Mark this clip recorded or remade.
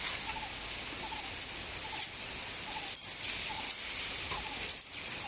recorded